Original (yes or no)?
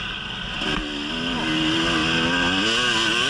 yes